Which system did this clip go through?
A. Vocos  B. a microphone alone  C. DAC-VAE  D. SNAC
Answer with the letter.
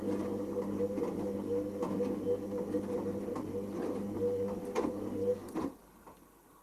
B